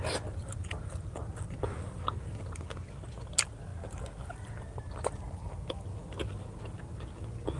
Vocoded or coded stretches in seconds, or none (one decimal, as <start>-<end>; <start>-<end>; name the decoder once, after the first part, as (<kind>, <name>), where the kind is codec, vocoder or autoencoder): none